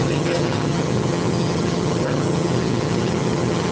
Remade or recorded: remade